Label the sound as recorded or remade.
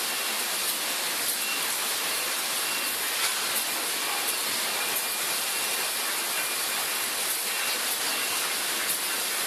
recorded